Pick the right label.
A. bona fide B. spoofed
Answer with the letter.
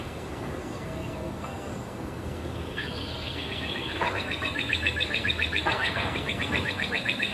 B